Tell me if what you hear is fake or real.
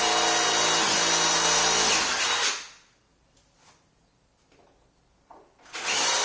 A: real